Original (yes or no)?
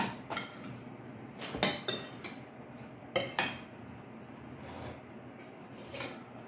yes